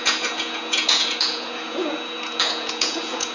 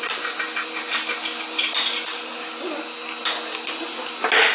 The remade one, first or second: first